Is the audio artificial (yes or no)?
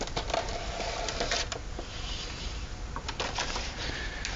no